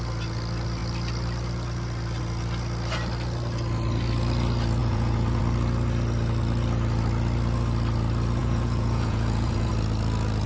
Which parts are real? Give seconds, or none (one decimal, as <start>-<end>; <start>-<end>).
0.0-4.8; 5.4-8.4; 9.7-10.5